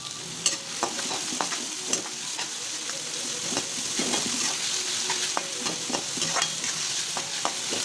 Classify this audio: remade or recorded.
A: recorded